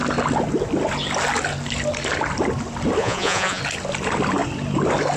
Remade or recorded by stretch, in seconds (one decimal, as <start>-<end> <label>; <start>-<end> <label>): 0.0-3.0 recorded; 3.0-3.6 remade; 3.6-5.2 recorded